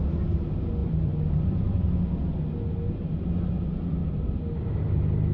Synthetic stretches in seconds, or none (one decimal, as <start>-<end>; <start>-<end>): 0.8-1.4; 4.0-4.7